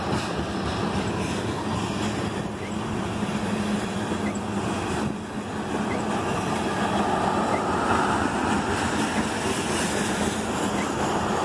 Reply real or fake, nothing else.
real